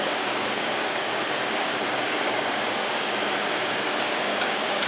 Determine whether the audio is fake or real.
fake